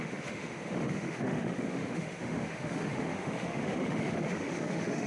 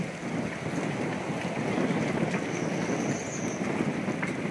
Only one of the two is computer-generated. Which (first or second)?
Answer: first